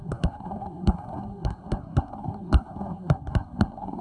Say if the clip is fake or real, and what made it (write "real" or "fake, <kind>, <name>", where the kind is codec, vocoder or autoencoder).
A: fake, codec, SNAC